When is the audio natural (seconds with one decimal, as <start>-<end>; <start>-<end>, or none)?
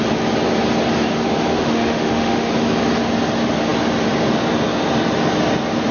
0.0-1.5; 2.5-5.9